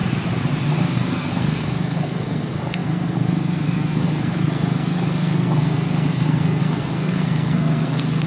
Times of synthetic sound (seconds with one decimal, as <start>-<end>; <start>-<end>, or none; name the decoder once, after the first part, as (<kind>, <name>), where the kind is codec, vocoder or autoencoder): 0.7-8.3 (codec, SNAC)